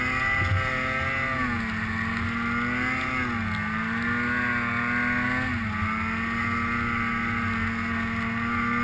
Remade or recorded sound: recorded